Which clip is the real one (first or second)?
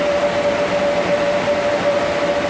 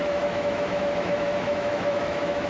first